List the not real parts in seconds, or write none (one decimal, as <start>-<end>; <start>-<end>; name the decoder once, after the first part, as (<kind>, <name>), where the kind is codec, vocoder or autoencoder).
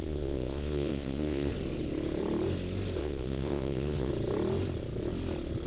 0.0-1.5 (vocoder, Vocos); 3.0-4.1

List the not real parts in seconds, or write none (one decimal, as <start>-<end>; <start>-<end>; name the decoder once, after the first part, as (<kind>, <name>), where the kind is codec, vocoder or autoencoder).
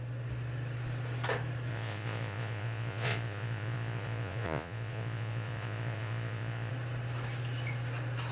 1.7-6.7 (vocoder, Vocos)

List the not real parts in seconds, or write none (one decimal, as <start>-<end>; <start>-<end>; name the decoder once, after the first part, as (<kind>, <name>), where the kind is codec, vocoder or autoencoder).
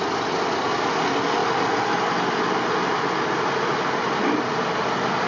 none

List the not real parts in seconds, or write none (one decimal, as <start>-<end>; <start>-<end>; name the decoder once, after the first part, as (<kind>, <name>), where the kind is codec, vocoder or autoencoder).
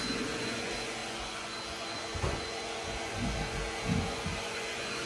0.0-5.1 (vocoder, Vocos)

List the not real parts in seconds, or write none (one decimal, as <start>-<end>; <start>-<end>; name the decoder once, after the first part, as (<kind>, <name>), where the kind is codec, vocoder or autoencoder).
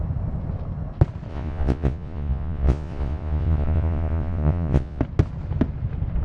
1.3-5.0 (vocoder, Vocos)